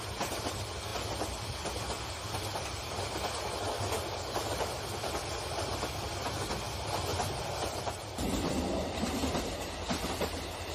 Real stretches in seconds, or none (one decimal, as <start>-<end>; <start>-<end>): 0.0-7.1; 9.4-10.7